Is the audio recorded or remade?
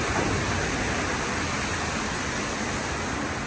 recorded